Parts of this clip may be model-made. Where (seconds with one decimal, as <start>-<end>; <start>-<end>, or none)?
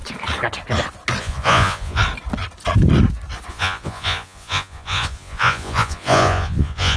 1.2-2.0; 3.5-7.0